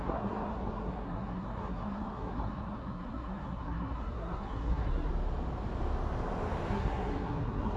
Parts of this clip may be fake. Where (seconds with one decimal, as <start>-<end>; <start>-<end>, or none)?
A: 0.0-5.1; 6.7-7.8